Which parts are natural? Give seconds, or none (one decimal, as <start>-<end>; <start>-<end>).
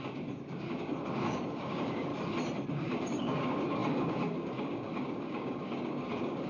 2.1-2.7